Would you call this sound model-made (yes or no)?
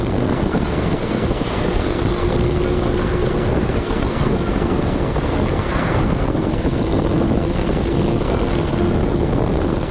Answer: yes